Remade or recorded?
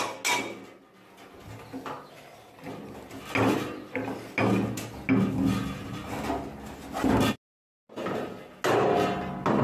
recorded